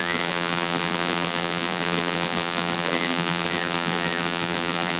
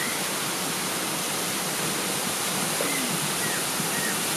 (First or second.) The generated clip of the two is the first